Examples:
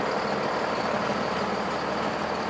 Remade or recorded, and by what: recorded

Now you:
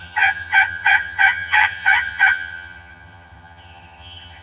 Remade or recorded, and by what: remade, vocoder, HiFi-GAN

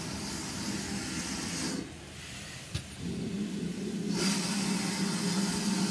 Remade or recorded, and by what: recorded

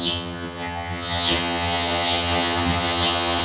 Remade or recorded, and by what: remade, vocoder, HiFi-GAN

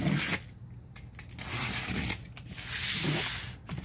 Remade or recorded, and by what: recorded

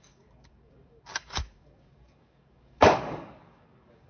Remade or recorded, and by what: remade, codec, DAC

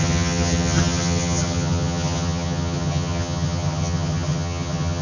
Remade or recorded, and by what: remade, vocoder, HiFi-GAN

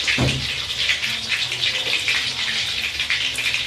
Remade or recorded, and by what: recorded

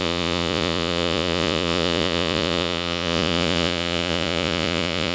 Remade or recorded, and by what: remade, vocoder, Vocos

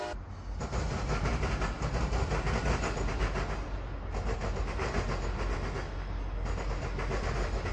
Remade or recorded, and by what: recorded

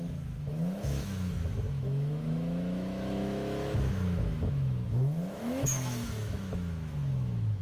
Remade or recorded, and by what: remade, autoencoder, DAC-VAE